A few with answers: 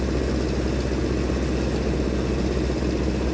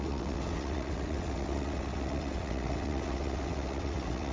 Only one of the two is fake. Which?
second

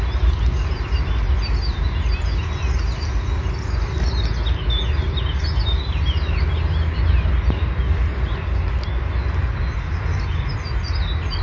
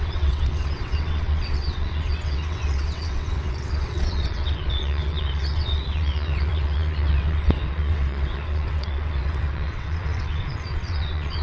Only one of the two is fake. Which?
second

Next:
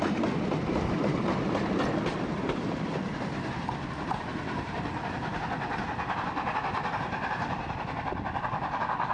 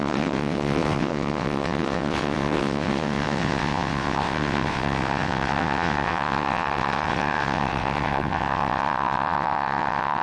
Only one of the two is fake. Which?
second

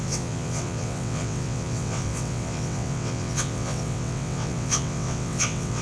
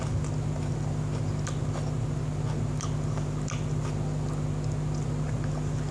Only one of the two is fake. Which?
first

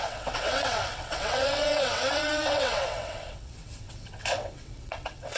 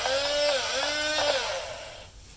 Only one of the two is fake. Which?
first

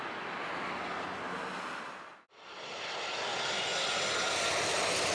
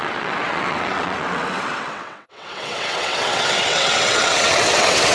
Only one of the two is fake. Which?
second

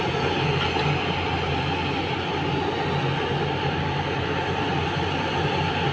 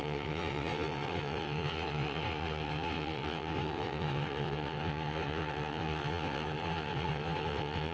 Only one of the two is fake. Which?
second